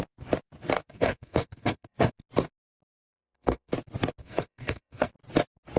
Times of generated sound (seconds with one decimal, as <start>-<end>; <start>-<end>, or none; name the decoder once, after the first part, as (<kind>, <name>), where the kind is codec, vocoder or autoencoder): 0.8-2.1 (codec, SNAC); 3.1-3.7; 4.2-5.1